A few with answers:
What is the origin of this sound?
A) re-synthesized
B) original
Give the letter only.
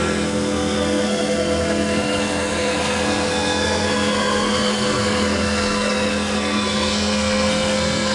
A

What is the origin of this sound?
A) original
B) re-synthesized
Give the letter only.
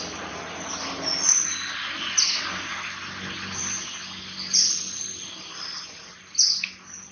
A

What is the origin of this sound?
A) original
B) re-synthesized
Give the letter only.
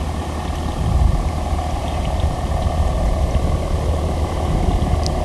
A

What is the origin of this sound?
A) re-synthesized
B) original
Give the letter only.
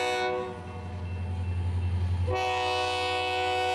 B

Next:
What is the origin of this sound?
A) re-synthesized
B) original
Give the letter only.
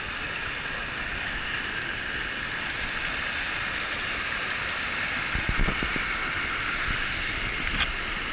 B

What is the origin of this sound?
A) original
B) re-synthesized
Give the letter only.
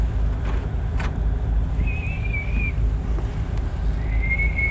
A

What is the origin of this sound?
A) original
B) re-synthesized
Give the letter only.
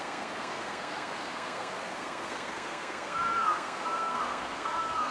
B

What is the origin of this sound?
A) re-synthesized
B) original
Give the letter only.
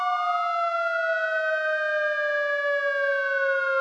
B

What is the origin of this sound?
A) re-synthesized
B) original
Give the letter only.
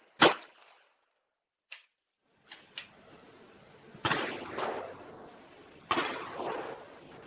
B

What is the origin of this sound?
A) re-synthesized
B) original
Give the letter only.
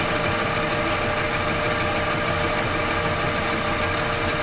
B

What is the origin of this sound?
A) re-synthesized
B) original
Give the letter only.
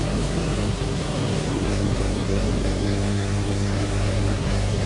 A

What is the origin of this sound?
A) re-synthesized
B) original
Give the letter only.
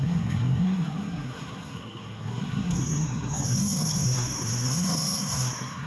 A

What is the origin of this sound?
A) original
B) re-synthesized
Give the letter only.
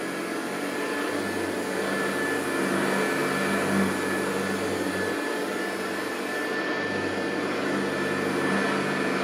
A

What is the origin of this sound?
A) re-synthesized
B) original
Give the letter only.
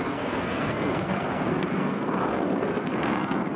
A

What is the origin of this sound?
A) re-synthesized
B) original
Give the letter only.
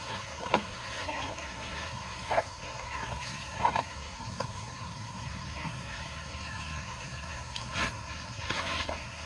A